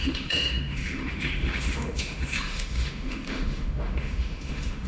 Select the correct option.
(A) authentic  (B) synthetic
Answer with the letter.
B